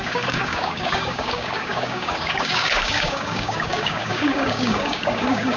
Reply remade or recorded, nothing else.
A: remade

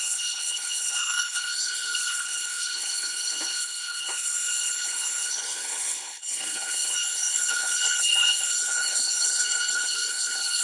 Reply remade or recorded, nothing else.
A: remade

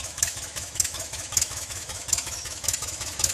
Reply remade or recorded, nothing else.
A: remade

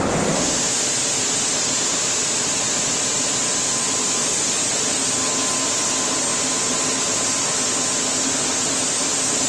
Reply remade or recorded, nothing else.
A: recorded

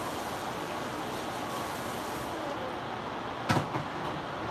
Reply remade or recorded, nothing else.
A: recorded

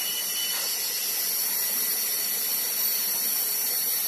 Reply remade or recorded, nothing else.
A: recorded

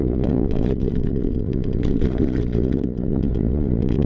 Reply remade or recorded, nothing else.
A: remade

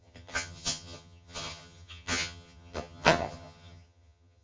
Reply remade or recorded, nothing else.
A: remade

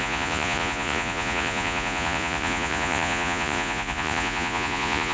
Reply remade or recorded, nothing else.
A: remade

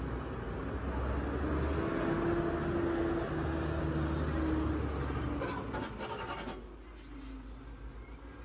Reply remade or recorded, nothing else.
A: recorded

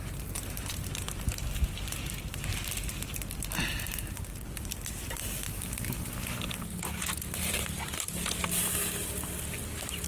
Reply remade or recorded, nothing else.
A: recorded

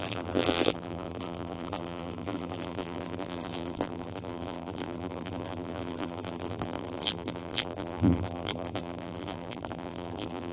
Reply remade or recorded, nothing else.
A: remade